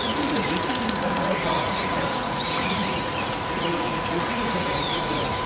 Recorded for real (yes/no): no